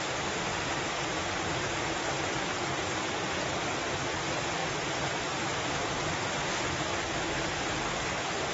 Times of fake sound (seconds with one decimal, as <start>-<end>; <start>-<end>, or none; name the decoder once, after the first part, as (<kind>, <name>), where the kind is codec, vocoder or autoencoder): 0.5-1.2 (vocoder, BigVGAN v2); 4.6-6.5; 6.9-7.6